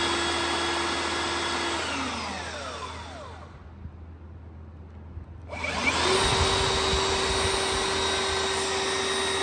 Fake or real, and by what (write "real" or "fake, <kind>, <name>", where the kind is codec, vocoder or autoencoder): real